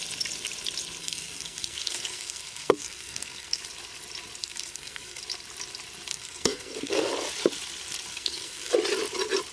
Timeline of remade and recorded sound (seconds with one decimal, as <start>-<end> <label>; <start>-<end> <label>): 0.0-1.0 recorded; 1.0-3.6 remade; 3.6-4.4 recorded; 4.4-5.2 remade; 5.2-6.1 recorded; 6.1-7.1 remade; 7.1-8.1 recorded; 8.1-8.7 remade; 8.7-9.5 recorded